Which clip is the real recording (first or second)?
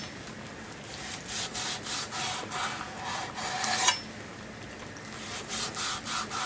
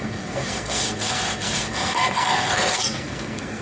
first